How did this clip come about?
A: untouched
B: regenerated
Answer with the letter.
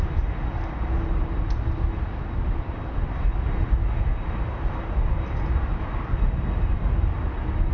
A